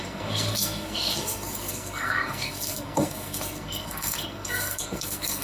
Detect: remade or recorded remade